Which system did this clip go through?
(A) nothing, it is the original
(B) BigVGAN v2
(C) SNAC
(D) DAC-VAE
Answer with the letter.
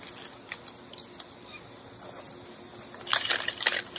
A